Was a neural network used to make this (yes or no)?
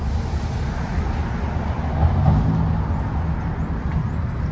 no